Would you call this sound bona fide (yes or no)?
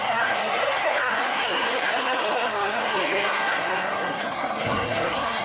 no